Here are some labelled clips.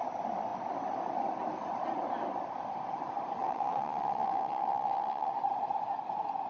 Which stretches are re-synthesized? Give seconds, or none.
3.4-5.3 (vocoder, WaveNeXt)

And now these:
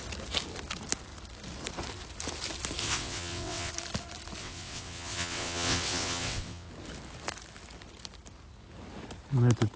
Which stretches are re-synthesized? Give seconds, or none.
2.8-3.7 (vocoder, WaveNeXt); 4.4-6.7

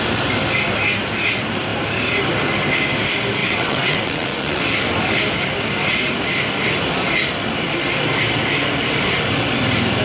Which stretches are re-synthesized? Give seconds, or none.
3.4-4.6 (vocoder, WaveNeXt)

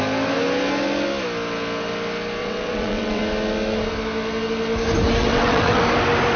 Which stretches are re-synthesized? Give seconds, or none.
2.4-3.2 (vocoder, WaveNeXt); 5.2-5.8